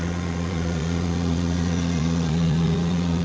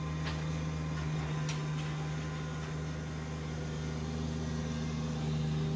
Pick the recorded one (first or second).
second